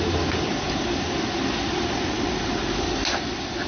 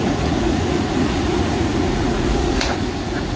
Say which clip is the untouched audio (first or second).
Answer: first